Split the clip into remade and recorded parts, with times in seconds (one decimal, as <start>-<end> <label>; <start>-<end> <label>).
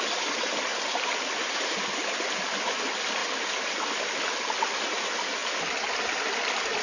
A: 0.0-6.8 recorded